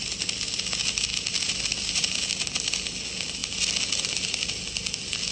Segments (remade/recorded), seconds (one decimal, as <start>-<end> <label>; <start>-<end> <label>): 0.0-1.1 recorded; 1.1-1.6 remade; 1.6-5.3 recorded